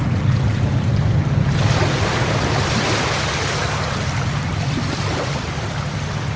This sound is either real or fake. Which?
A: real